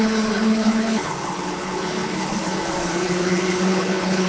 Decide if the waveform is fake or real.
fake